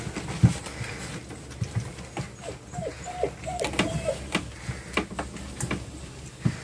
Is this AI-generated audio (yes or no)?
no